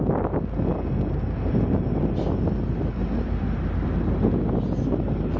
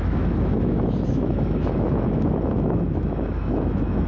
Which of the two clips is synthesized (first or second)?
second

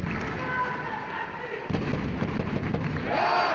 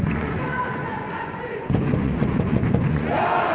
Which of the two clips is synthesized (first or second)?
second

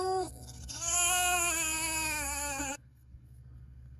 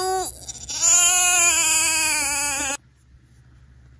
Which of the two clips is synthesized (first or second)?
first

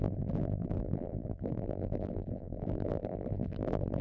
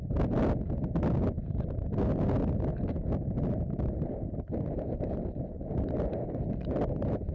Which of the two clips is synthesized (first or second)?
first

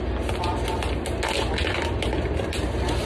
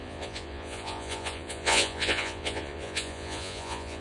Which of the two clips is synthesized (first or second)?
second